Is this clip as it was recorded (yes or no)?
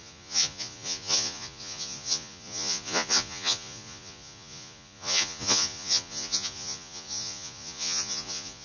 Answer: no